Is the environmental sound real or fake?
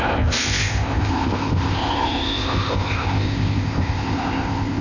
fake